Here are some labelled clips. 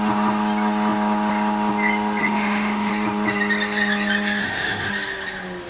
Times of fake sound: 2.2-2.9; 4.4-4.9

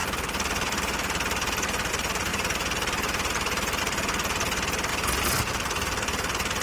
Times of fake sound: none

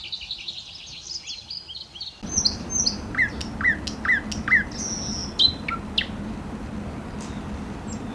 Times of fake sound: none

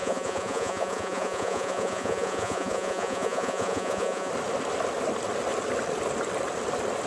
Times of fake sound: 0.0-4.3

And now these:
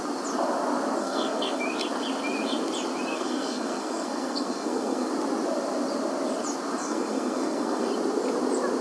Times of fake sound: 1.0-1.6; 3.1-5.1; 6.8-7.9

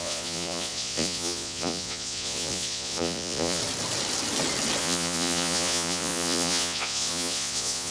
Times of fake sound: 0.0-3.6; 4.8-7.9

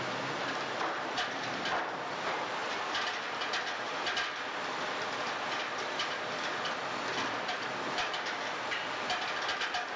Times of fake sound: none